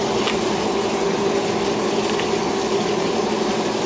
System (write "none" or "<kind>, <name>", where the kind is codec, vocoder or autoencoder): none